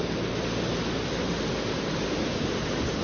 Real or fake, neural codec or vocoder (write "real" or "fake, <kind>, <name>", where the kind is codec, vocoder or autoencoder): real